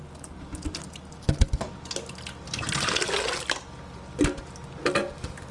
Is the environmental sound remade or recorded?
recorded